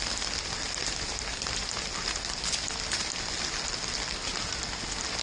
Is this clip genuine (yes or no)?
yes